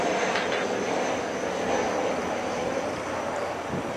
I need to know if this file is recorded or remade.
recorded